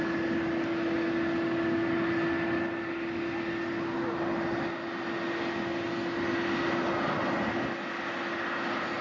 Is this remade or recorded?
recorded